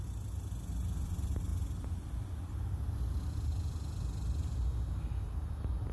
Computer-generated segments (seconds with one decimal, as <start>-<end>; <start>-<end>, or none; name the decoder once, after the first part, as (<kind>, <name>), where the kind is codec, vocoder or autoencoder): none

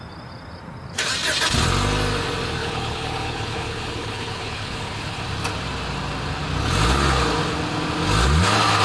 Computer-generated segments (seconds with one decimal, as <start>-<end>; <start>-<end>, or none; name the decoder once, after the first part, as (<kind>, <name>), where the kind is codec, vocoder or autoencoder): 2.6-5.2 (codec, HILCodec)

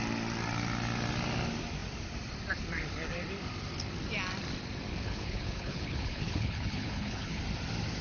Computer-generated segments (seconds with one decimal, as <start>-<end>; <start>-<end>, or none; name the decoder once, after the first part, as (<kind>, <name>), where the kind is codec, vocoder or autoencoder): 4.9-7.4 (codec, HILCodec)

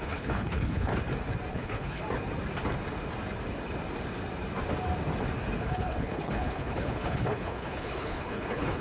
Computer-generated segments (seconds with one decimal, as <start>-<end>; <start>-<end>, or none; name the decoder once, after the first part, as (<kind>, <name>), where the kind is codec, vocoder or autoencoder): 0.0-0.9 (codec, HILCodec); 1.5-2.0; 5.6-8.8

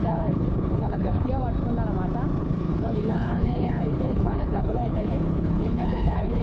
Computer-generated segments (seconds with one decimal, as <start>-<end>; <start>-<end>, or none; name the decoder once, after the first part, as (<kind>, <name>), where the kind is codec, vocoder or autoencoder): 0.0-1.3 (codec, HILCodec); 2.4-6.4

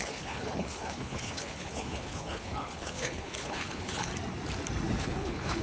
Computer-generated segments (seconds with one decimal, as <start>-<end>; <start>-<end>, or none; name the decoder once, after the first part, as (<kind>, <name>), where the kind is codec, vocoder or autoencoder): 0.0-4.1 (codec, HILCodec); 5.0-5.6

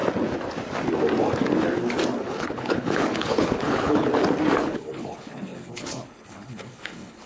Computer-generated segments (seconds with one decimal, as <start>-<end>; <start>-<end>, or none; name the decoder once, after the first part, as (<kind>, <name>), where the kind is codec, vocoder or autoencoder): 2.2-4.1 (codec, HILCodec); 4.6-7.3